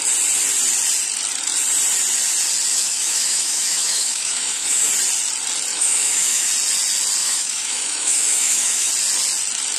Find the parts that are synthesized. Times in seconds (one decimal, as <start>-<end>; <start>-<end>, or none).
2.7-4.9; 5.7-6.5; 7.2-8.9